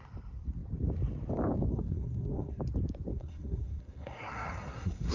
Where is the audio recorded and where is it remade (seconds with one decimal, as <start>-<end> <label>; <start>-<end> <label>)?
0.0-1.7 recorded; 1.7-2.6 remade; 2.6-3.1 recorded; 3.1-5.1 remade